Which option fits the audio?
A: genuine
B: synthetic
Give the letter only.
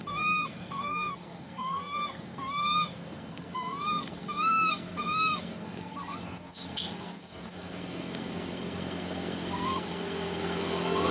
B